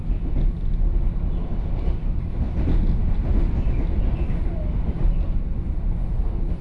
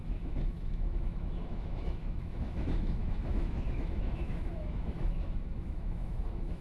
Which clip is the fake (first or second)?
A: second